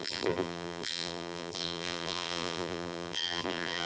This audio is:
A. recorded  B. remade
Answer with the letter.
B